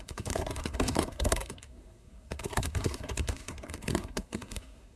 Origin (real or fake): fake